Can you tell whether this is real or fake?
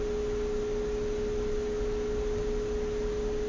real